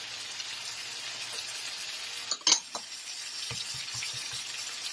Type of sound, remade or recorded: recorded